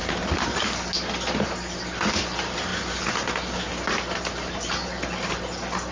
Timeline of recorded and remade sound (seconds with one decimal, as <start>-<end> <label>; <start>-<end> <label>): 0.0-5.9 recorded